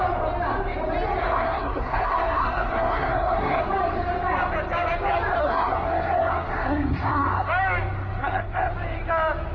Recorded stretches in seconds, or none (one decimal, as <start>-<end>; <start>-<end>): 0.0-1.2; 3.6-5.4; 7.5-8.2; 8.7-9.5